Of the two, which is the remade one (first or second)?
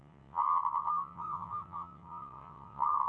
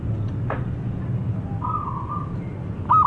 first